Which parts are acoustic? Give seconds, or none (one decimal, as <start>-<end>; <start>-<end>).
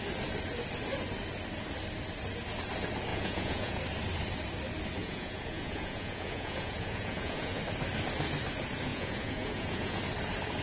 0.0-3.1; 3.8-5.0; 7.6-8.9; 10.0-10.6